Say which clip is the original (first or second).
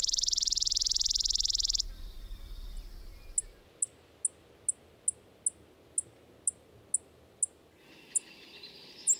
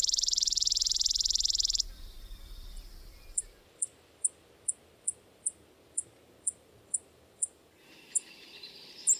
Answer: first